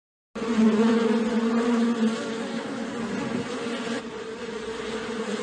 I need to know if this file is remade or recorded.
recorded